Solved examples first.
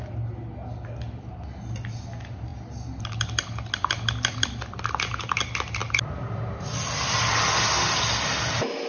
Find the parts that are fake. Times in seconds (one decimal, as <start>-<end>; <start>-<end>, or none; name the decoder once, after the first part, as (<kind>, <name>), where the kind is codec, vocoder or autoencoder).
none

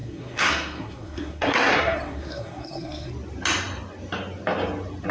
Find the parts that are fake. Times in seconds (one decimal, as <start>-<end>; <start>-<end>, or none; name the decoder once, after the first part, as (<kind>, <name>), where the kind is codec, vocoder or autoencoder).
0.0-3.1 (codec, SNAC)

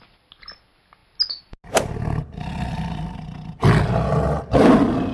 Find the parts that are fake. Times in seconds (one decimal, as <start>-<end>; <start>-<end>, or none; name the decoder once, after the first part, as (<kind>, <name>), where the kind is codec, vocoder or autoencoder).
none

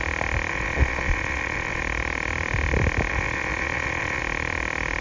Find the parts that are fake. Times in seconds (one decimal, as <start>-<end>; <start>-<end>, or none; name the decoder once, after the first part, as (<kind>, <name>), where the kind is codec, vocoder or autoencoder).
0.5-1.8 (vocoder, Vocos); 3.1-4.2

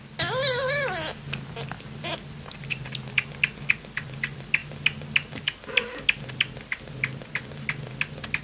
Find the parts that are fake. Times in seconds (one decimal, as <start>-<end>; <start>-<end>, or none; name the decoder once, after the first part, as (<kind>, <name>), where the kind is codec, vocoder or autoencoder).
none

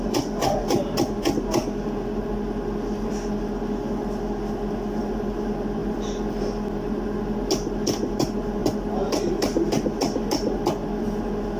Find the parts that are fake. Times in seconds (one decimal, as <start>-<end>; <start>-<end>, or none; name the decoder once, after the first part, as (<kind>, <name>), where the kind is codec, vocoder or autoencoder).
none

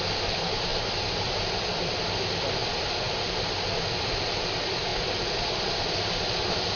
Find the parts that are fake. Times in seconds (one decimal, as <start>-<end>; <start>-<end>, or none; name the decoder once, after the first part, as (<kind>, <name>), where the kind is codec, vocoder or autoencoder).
none